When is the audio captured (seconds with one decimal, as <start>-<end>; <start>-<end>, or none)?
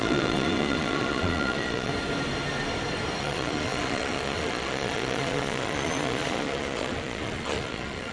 1.9-3.2